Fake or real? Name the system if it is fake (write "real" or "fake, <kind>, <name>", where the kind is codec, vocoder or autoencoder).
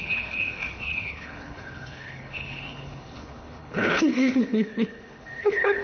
fake, codec, HILCodec